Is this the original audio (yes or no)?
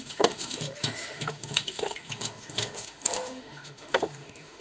no